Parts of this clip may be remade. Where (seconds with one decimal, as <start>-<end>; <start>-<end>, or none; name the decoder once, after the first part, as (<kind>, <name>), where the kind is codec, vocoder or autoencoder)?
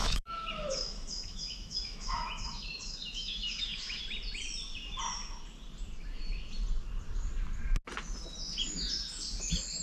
0.0-4.0 (autoencoder, DAC-VAE)